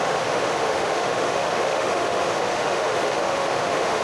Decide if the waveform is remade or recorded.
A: remade